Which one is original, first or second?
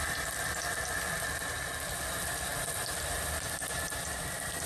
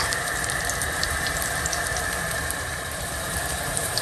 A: first